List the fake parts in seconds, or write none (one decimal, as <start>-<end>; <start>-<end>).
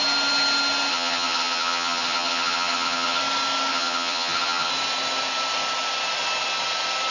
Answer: 0.9-3.2; 3.7-4.7